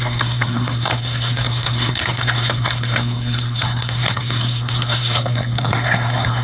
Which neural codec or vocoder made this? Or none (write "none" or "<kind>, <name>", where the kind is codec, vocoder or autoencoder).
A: codec, SNAC